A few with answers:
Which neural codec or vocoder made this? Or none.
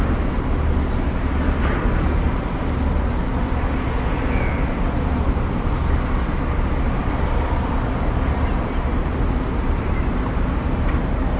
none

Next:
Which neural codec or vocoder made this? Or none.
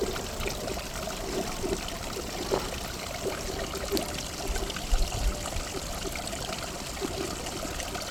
none